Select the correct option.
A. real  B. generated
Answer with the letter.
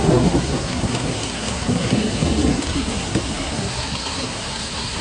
B